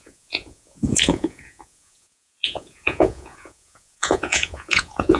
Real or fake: fake